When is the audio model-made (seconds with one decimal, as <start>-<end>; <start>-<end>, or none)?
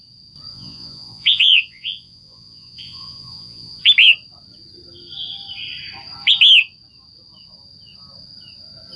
0.5-3.8